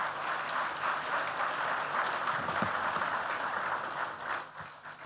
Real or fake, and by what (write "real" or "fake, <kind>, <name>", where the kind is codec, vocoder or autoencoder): real